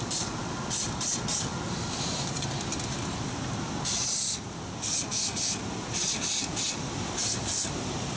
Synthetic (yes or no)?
no